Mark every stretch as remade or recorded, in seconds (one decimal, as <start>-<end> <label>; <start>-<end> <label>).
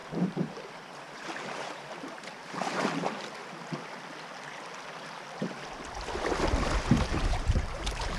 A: 0.0-3.4 remade; 3.4-6.8 recorded; 6.8-8.2 remade